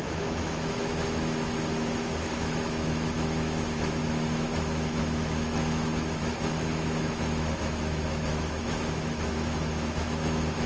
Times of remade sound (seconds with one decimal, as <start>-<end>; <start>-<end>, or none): 0.0-10.7